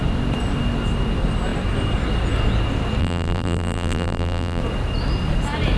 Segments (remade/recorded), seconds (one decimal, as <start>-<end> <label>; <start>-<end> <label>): 0.0-3.0 recorded; 3.0-4.6 remade; 4.6-5.8 recorded